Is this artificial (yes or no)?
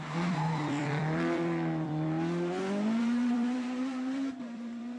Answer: yes